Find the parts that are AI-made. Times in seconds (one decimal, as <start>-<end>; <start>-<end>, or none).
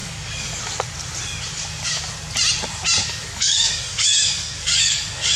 0.0-0.6; 1.5-2.0; 3.0-5.4